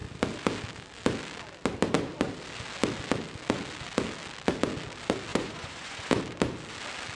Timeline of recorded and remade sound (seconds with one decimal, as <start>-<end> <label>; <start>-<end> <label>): 0.0-5.3 recorded; 5.3-6.2 remade; 6.2-7.2 recorded